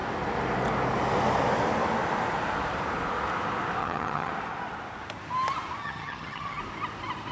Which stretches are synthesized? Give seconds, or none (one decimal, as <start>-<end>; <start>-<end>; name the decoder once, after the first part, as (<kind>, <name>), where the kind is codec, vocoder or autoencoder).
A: 3.8-4.3 (vocoder, HiFi-GAN); 5.8-6.6